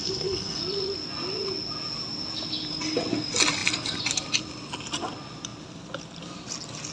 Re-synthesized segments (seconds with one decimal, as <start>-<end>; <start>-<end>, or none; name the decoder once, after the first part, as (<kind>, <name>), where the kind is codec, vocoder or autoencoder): 0.0-0.6 (codec, SNAC)